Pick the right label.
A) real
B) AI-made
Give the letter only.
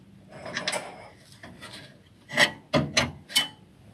A